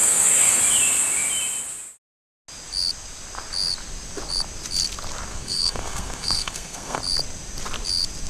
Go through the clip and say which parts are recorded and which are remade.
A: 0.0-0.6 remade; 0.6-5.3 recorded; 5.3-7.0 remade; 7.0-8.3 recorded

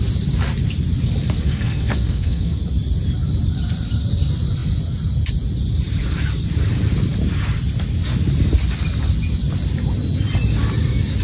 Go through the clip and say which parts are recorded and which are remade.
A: 0.0-1.4 recorded; 1.4-2.6 remade; 2.6-11.2 recorded